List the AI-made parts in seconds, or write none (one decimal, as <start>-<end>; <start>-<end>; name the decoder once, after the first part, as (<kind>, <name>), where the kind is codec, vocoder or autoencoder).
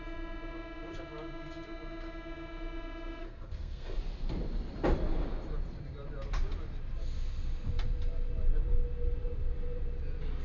3.2-4.0 (codec, SNAC)